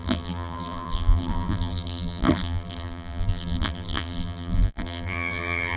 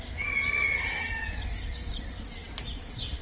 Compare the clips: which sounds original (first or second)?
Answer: second